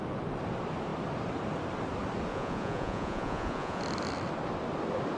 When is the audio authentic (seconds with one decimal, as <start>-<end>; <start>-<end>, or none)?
0.0-2.3; 3.8-5.2